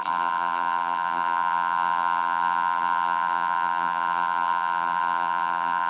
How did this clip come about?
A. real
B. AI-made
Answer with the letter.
B